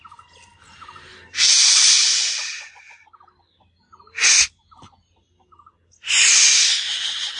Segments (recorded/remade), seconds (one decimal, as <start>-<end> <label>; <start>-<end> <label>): 0.0-1.1 recorded; 1.1-2.8 remade; 2.8-7.4 recorded